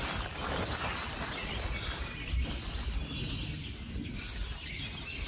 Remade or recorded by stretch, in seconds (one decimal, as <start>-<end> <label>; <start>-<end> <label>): 0.0-5.3 recorded